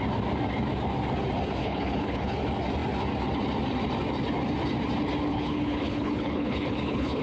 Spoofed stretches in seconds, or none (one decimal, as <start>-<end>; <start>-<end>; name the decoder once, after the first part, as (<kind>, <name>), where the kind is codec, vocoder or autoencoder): 1.6-2.4 (codec, HILCodec); 5.3-7.2